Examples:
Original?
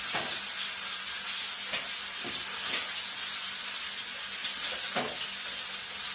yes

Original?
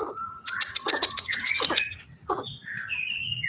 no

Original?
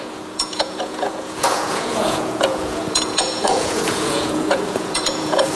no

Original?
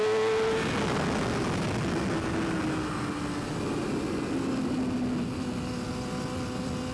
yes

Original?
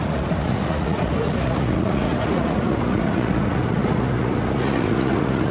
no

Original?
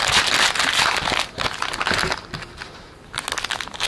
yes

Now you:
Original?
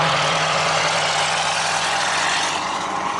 no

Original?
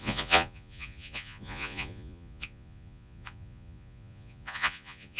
no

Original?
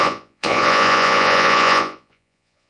no